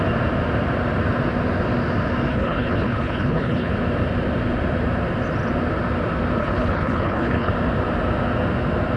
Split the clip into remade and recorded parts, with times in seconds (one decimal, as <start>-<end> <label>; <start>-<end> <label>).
0.0-2.3 recorded; 2.3-3.7 remade; 3.7-6.4 recorded; 6.4-7.5 remade; 7.5-9.0 recorded